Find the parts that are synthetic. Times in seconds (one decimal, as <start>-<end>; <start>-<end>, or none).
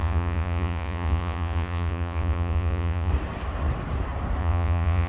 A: 0.0-3.1; 4.4-5.1